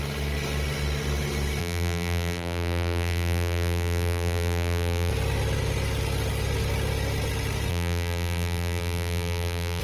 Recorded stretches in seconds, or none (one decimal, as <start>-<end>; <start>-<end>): 0.0-1.6; 5.1-7.7